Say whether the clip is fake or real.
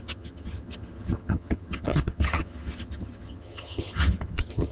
fake